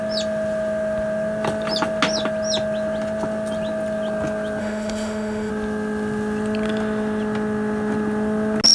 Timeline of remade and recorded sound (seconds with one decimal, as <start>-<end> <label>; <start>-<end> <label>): 0.0-4.6 recorded; 4.6-5.5 remade; 5.5-8.7 recorded